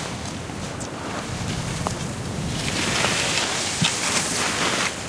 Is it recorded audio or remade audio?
recorded